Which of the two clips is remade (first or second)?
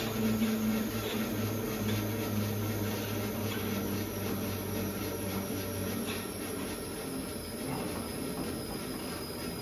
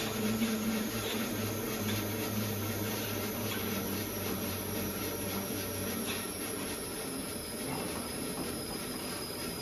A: second